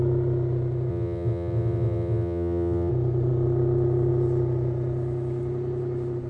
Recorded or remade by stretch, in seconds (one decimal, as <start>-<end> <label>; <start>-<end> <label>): 0.0-0.9 recorded; 0.9-2.9 remade; 2.9-6.3 recorded